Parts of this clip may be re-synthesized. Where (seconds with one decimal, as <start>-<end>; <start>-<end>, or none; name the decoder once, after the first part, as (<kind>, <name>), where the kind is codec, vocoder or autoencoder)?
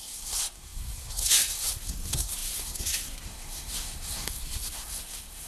0.0-5.5 (codec, SNAC)